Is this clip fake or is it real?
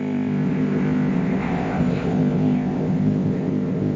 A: fake